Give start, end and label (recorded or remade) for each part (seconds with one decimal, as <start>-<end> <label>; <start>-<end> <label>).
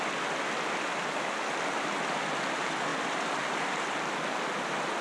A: 0.0-2.9 recorded; 2.9-3.5 remade; 3.5-5.0 recorded